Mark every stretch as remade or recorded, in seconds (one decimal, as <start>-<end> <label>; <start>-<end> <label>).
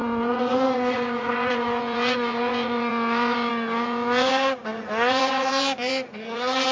0.0-6.7 remade